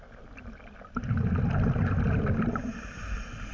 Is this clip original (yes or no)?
yes